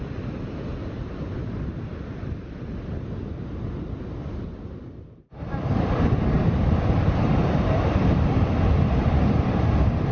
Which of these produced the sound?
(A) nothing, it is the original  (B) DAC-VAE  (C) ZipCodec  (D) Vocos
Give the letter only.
A